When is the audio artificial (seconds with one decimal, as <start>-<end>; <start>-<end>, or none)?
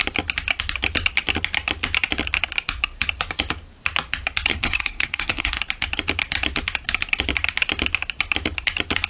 4.5-5.6